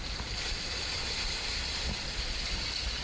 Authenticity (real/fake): real